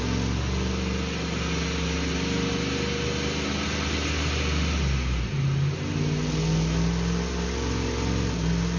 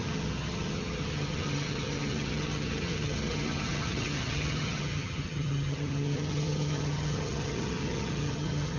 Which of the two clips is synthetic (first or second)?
second